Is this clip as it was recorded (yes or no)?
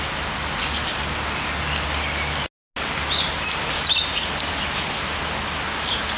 yes